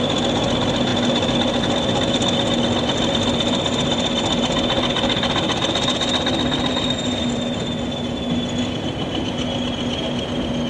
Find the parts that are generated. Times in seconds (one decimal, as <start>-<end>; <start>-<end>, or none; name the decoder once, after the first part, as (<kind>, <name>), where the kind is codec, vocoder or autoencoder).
none